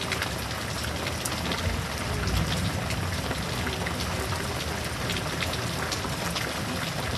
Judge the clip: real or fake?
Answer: real